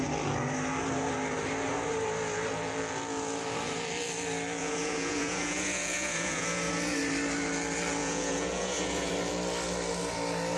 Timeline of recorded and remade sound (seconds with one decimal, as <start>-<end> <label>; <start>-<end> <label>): 0.0-4.6 recorded; 4.6-6.7 remade; 6.7-8.0 recorded; 8.0-9.1 remade; 9.1-10.6 recorded